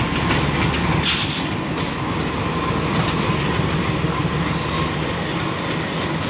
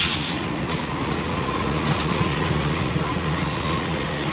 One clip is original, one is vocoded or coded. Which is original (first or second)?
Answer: first